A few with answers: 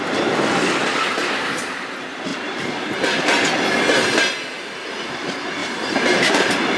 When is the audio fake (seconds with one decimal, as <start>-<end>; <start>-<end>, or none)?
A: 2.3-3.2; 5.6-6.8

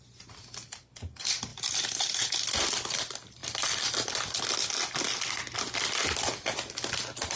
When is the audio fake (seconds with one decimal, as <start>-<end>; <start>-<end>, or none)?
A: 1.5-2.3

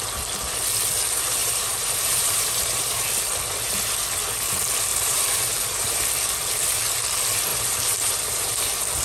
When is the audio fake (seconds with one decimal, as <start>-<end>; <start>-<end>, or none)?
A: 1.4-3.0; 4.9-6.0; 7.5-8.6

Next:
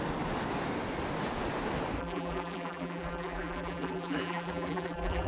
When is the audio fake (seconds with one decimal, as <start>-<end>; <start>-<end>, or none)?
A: 2.0-5.3

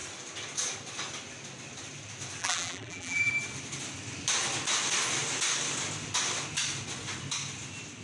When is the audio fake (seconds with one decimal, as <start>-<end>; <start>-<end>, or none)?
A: 2.4-3.3